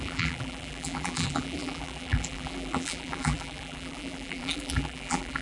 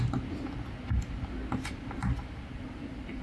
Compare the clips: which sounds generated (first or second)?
first